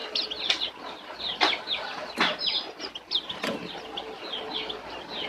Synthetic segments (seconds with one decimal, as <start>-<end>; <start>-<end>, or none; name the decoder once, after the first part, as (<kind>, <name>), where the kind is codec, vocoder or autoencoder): none